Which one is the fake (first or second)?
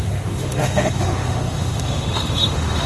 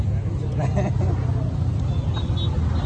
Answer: first